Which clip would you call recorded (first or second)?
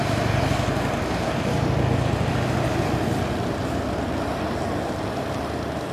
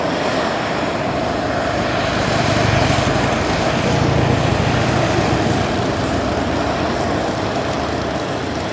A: first